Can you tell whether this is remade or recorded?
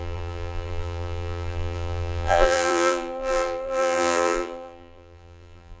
remade